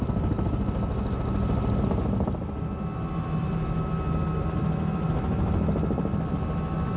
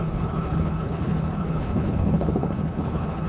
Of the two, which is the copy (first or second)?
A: second